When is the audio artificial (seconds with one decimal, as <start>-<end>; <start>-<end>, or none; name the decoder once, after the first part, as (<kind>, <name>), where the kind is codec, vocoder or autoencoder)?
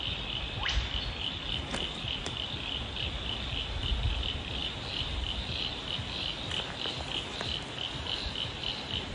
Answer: none